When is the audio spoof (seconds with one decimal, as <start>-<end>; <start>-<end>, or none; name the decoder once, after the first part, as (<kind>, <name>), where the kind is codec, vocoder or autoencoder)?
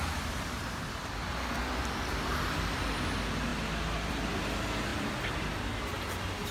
none